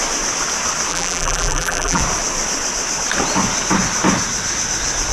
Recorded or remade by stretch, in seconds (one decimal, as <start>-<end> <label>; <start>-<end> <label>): 0.0-0.9 recorded; 0.9-2.0 remade; 2.0-5.1 recorded